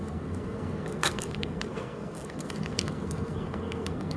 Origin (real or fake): fake